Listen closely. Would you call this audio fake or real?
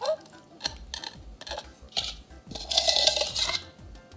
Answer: real